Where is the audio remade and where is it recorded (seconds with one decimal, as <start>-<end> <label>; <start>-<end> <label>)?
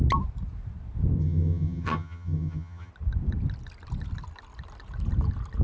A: 0.0-1.2 recorded; 1.2-2.9 remade; 2.9-5.6 recorded